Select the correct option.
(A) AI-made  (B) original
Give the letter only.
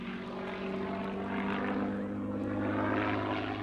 B